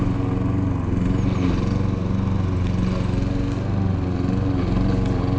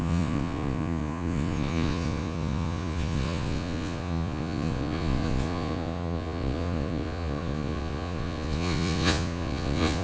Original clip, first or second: first